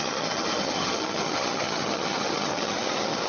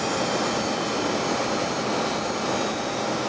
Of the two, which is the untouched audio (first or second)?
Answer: second